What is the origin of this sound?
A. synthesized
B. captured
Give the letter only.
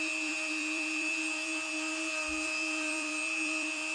A